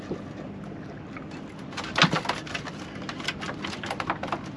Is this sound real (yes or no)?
yes